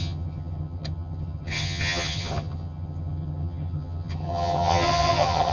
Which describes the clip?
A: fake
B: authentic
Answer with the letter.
A